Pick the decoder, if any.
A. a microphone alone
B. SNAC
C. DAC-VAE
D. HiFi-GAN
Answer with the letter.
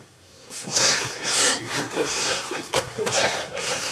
B